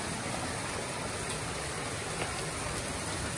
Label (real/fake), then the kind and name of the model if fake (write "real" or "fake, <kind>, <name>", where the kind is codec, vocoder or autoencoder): real